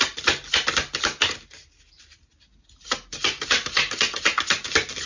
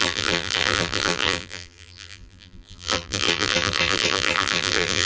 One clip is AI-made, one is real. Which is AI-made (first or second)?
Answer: second